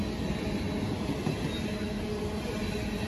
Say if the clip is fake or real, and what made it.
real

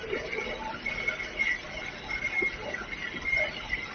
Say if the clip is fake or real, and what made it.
fake, vocoder, BigVGAN v2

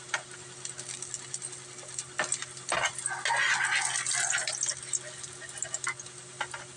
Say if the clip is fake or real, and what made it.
real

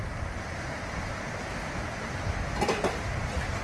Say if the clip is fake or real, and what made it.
real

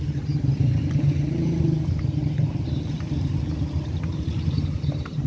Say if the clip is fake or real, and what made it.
fake, vocoder, BigVGAN v2